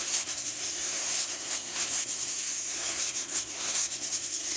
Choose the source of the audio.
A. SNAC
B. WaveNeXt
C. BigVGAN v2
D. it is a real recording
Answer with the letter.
A